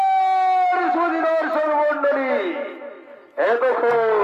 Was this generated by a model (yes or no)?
no